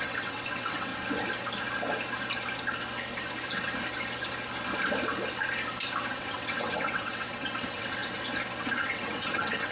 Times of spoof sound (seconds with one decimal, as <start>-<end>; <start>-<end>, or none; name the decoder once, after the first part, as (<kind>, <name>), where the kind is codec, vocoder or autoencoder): 0.0-0.9 (vocoder, WaveNeXt); 6.1-8.0; 8.8-9.7